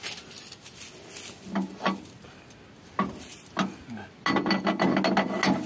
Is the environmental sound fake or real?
real